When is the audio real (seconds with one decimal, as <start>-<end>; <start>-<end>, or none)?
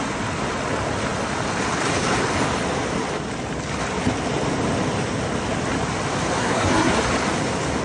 0.0-6.4; 6.9-7.8